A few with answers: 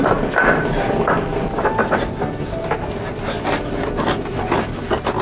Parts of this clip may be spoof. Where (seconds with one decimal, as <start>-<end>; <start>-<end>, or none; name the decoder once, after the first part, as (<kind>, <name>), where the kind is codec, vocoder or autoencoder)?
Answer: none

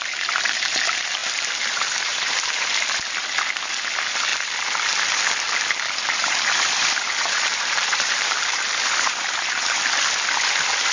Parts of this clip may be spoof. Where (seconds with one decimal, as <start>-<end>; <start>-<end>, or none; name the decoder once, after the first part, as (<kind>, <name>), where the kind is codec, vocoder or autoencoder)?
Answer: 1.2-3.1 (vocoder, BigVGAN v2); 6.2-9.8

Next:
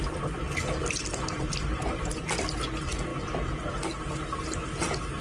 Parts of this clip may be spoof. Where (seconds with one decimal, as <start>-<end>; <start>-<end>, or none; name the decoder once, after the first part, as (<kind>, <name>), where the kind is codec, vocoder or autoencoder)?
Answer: 0.8-2.1 (vocoder, BigVGAN v2)

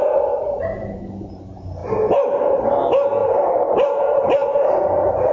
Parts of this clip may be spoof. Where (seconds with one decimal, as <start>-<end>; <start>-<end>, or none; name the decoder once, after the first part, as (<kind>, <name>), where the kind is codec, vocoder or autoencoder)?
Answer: 3.2-4.0 (vocoder, BigVGAN v2); 4.4-5.3

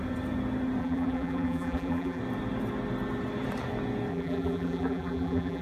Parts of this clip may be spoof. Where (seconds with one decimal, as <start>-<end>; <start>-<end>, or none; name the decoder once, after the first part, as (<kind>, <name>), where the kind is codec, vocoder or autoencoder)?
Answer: 0.8-2.2 (vocoder, BigVGAN v2); 4.1-5.6